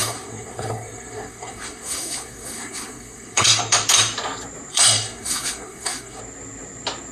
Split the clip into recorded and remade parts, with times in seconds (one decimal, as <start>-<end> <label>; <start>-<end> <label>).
0.0-3.6 remade; 3.6-4.7 recorded; 4.7-6.2 remade; 6.2-7.1 recorded